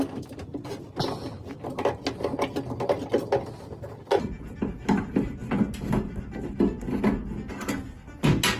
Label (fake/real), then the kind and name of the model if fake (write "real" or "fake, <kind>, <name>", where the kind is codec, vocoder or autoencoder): real